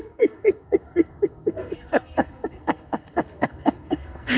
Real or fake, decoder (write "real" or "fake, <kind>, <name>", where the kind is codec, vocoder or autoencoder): fake, codec, SNAC